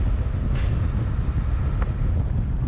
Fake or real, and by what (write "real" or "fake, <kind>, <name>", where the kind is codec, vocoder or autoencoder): real